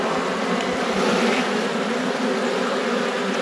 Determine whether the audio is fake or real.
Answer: real